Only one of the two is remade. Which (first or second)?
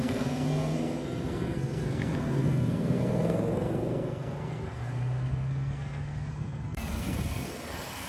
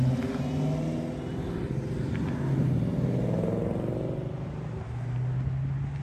first